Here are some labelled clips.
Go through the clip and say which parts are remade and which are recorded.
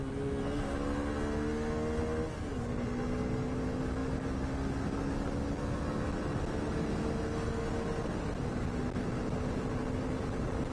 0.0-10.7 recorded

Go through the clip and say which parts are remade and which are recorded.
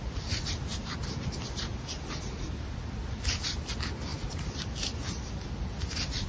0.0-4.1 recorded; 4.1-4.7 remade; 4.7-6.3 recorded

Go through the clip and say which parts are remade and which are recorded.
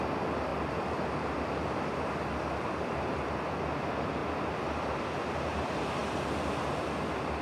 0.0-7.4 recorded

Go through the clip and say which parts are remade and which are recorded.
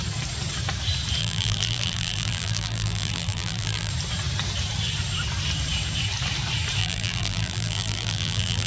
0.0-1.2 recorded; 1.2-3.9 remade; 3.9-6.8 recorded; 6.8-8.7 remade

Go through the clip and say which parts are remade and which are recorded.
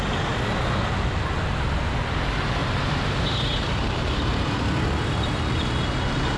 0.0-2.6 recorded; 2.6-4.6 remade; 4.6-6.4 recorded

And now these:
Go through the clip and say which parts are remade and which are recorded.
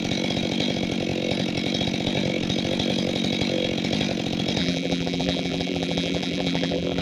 0.0-4.6 recorded; 4.6-7.0 remade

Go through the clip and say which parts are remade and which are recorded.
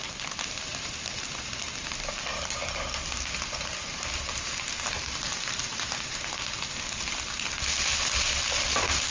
0.0-0.7 recorded; 0.7-1.3 remade; 1.3-3.9 recorded; 3.9-6.4 remade; 6.4-9.1 recorded